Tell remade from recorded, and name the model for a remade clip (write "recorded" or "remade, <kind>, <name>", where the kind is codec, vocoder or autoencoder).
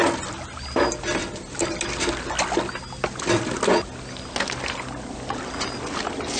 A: recorded